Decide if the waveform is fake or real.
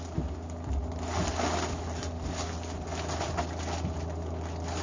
real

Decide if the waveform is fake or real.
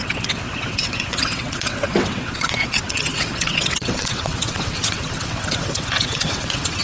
fake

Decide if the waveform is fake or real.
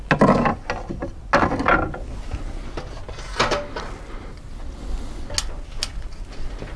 real